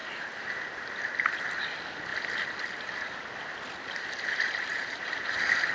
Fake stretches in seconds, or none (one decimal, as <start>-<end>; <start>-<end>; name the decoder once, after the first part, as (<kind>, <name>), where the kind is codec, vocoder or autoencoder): 0.0-0.6 (vocoder, BigVGAN v2); 4.7-5.2